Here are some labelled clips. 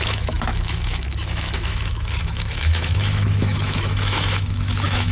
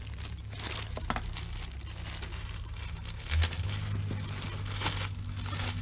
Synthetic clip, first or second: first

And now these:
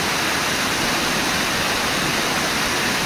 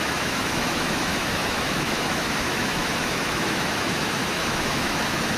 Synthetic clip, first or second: second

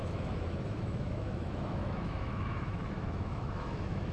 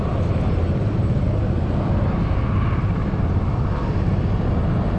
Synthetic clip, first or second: first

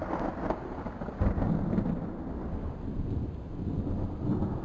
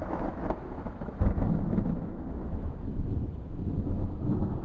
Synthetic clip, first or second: second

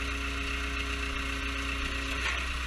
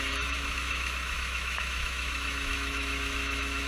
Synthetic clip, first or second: second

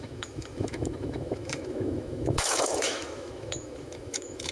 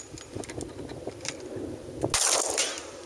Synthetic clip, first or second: first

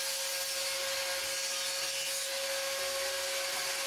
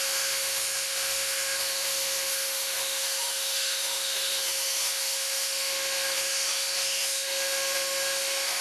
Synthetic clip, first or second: second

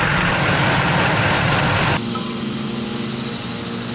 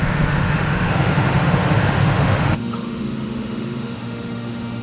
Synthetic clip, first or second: second